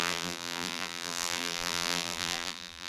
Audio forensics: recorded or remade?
remade